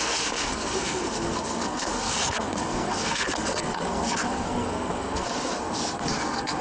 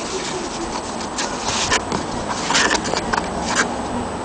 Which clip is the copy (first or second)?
first